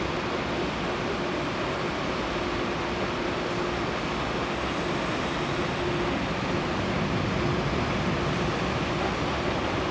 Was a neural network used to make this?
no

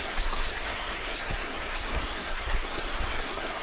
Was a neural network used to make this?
yes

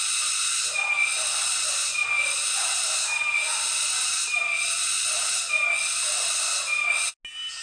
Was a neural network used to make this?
no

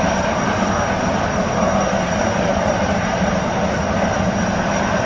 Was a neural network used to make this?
no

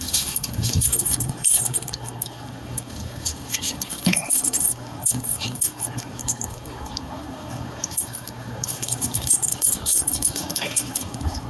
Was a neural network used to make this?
yes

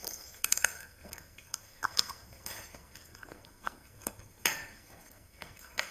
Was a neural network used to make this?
yes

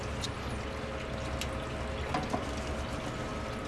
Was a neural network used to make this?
no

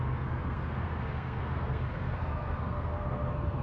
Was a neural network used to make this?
yes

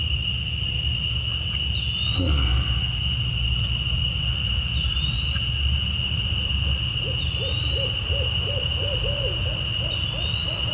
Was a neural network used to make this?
no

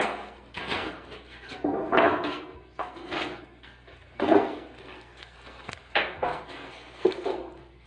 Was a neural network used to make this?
yes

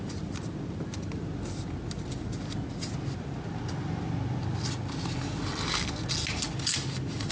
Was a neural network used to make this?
no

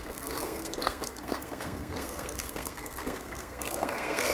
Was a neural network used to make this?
yes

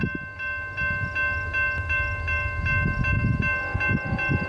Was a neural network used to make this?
no